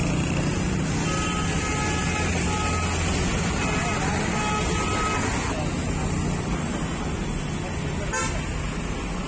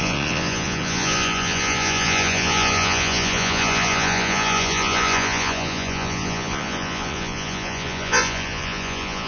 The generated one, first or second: second